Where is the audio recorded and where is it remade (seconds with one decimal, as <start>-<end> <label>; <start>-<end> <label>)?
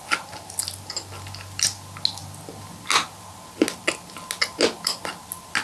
0.0-5.6 recorded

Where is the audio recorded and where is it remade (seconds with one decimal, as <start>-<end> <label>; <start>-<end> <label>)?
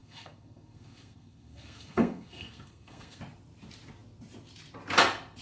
0.0-3.2 remade; 3.2-5.4 recorded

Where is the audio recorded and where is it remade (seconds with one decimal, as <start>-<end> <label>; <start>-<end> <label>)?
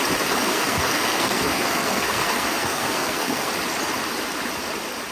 0.0-0.4 recorded; 0.4-3.5 remade; 3.5-5.1 recorded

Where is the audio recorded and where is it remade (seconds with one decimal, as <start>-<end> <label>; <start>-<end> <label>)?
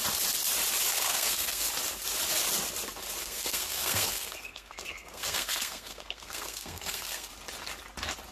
0.0-0.9 recorded; 0.9-1.7 remade; 1.7-3.2 recorded; 3.2-7.3 remade; 7.3-8.3 recorded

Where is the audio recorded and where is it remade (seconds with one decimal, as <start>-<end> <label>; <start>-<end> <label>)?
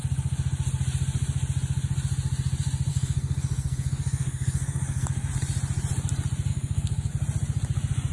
0.0-2.9 recorded; 2.9-5.3 remade; 5.3-6.5 recorded; 6.5-7.1 remade; 7.1-8.1 recorded